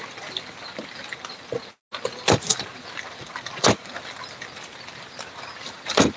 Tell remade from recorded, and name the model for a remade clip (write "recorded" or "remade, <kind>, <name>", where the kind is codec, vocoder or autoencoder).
recorded